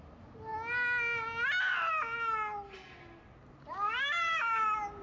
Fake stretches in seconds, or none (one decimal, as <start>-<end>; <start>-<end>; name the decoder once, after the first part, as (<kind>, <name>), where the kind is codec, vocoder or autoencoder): none